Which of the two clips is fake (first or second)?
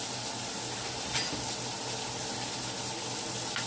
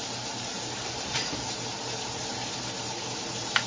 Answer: second